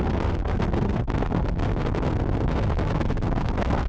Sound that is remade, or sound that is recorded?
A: remade